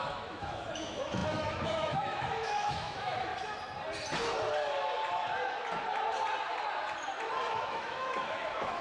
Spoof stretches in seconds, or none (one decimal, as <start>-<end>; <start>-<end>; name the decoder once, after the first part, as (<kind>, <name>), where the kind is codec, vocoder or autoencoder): 0.0-3.3 (autoencoder, DAC-VAE); 7.5-8.8